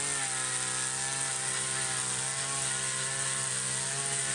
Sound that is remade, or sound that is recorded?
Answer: recorded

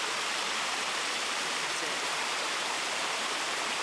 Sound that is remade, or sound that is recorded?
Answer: remade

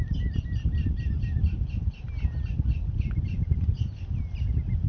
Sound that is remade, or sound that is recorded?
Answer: recorded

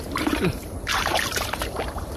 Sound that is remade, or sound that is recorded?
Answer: remade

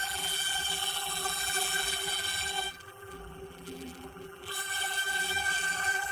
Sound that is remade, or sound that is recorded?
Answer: remade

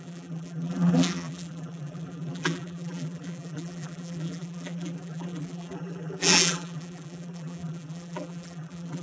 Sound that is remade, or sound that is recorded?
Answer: remade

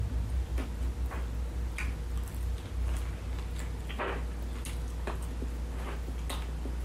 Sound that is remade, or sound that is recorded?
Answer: recorded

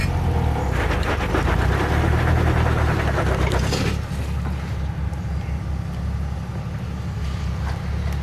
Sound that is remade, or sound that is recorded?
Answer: recorded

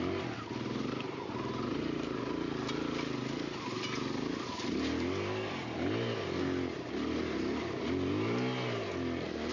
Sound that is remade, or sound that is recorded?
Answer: recorded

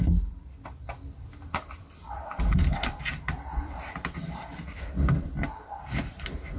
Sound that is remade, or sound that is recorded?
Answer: remade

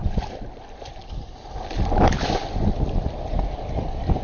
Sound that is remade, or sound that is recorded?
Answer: recorded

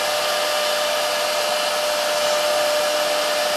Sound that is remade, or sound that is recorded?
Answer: remade